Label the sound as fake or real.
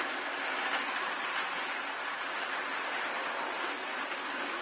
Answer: real